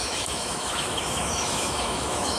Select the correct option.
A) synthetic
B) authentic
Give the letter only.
A